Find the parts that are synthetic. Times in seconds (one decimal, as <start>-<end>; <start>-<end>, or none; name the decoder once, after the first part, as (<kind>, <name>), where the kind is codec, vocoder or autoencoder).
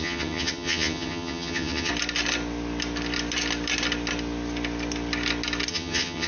0.0-1.9 (vocoder, HiFi-GAN); 5.7-6.3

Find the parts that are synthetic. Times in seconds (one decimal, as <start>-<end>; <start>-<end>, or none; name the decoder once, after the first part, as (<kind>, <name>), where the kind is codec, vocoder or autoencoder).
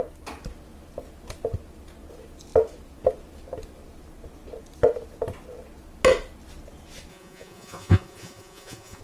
7.1-9.0 (vocoder, Vocos)